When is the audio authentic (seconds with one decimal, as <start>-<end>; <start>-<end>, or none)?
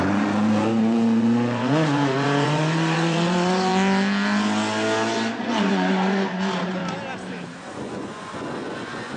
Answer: 3.7-5.4; 6.8-7.6